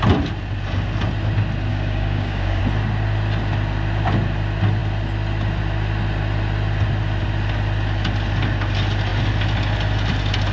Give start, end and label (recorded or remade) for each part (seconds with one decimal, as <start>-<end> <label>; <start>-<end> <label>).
0.0-1.7 recorded; 1.7-2.6 remade; 2.6-10.5 recorded